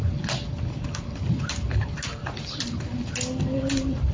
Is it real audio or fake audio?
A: real